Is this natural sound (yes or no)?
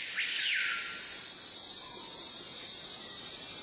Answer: yes